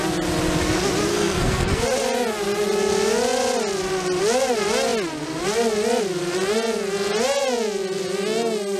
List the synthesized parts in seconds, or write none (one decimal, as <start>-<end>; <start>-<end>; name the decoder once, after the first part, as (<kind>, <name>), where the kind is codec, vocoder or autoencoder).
1.1-1.8 (codec, SNAC)